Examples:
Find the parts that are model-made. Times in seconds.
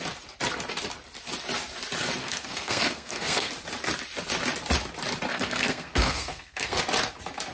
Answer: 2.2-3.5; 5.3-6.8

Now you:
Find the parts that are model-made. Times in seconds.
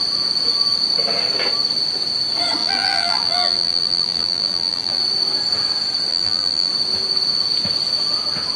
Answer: 2.6-5.0; 6.1-6.7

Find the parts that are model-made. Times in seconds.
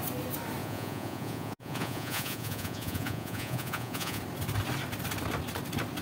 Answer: 0.6-4.2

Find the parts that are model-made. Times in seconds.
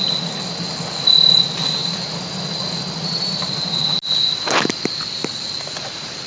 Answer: none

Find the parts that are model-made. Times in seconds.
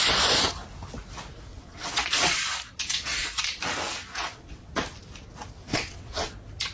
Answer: 1.5-2.4; 2.8-3.4; 4.1-4.7; 5.6-6.3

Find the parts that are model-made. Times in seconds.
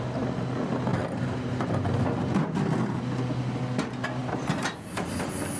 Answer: none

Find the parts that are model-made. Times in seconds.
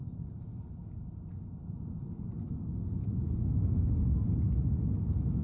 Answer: none